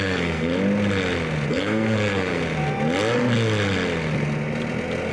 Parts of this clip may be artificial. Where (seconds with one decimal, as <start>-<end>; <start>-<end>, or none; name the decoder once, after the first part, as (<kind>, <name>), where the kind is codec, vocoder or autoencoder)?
0.0-0.5 (codec, SNAC); 1.5-2.4